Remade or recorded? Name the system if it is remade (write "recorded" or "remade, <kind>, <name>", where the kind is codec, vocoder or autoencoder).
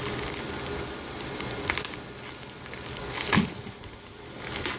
recorded